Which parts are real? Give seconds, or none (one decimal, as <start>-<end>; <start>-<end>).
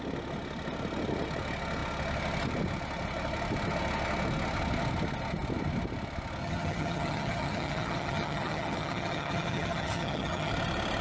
0.0-6.4; 10.5-11.0